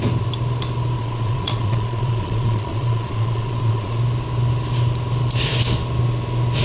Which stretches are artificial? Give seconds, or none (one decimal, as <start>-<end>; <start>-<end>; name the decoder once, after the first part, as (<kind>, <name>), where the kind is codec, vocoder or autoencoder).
1.0-4.0 (vocoder, Vocos)